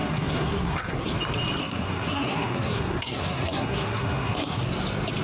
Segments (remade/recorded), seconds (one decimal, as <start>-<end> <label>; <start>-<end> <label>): 0.0-1.1 remade; 1.1-1.6 recorded; 1.6-4.6 remade; 4.6-5.2 recorded